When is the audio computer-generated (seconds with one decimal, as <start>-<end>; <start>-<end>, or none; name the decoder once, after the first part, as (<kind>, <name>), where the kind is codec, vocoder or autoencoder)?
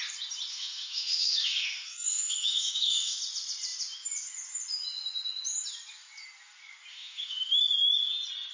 0.5-3.2 (autoencoder, DAC-VAE); 6.9-7.6